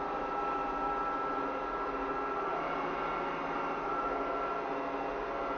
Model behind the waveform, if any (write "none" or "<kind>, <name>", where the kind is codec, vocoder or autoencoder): none